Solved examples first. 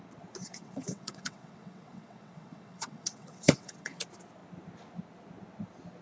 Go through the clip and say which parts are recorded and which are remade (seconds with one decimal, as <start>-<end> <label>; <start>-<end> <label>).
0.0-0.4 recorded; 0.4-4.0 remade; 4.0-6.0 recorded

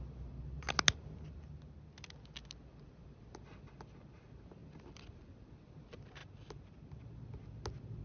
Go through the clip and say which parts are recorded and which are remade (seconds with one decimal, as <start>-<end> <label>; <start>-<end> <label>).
0.0-8.0 recorded

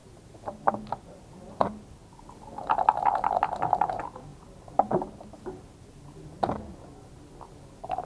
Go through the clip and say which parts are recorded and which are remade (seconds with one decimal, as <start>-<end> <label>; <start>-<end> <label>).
0.0-8.1 recorded